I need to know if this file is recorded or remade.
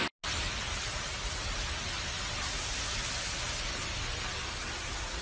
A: recorded